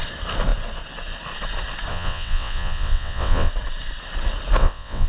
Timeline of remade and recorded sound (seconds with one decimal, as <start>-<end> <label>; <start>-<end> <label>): 0.0-1.9 recorded; 1.9-3.5 remade; 3.5-4.6 recorded; 4.6-5.1 remade